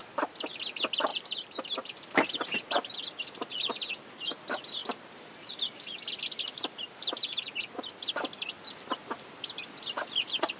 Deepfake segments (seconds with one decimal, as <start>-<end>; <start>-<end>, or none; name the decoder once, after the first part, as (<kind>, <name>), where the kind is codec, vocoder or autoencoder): none